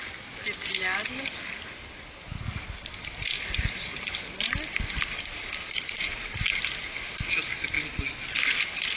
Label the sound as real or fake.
real